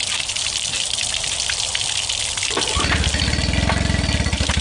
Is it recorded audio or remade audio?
recorded